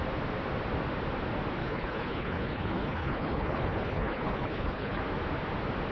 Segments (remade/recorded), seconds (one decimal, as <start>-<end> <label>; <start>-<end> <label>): 0.0-1.6 recorded; 1.6-5.0 remade; 5.0-5.9 recorded